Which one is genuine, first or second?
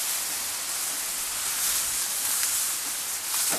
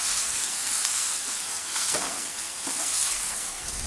first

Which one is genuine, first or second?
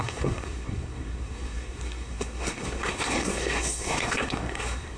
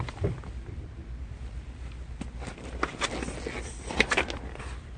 second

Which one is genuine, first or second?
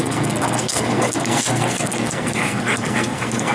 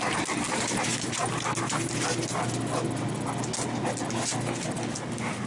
second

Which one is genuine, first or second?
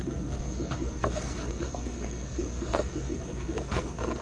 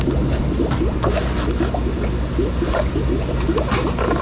second